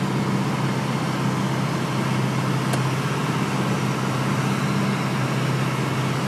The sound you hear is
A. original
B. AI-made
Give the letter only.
A